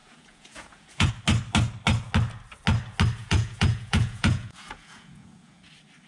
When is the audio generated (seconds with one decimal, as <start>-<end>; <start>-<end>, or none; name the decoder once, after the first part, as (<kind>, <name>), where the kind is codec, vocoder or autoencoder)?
0.0-1.1 (vocoder, Vocos); 3.2-5.6

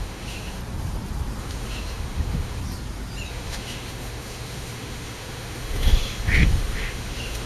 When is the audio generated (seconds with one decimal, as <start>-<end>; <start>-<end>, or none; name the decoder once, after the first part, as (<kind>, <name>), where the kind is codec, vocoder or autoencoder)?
0.0-0.6 (autoencoder, DAC-VAE); 1.4-2.6; 3.3-7.5